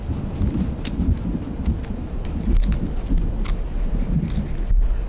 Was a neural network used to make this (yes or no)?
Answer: no